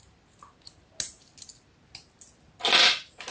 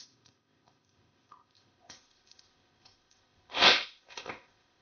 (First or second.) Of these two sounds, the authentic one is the first